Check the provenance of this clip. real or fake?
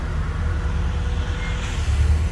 real